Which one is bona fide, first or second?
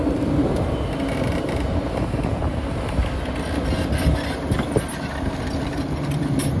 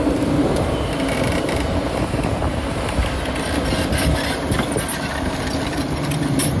first